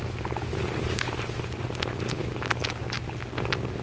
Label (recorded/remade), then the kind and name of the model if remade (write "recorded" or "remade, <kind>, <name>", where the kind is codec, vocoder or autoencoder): recorded